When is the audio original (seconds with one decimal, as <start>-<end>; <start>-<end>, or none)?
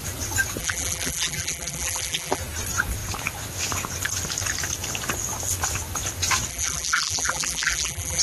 0.0-0.6; 2.4-6.5